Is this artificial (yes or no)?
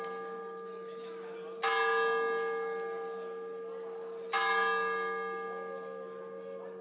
no